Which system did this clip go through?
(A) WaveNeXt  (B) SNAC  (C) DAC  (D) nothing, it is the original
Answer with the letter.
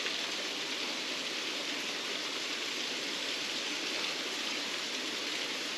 D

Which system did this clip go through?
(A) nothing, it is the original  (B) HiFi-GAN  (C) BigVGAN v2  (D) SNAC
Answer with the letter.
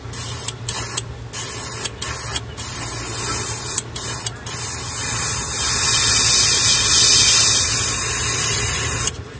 A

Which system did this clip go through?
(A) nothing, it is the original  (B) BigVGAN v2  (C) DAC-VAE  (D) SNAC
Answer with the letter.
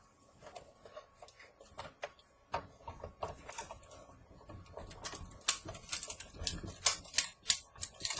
A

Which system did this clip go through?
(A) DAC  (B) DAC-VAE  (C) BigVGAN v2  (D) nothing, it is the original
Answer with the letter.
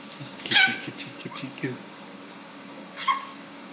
A